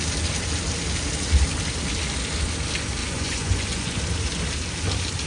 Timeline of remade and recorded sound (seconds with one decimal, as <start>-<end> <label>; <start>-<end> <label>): 0.0-3.0 recorded; 3.0-4.0 remade; 4.0-5.3 recorded